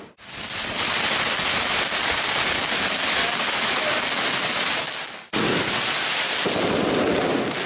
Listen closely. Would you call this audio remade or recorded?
recorded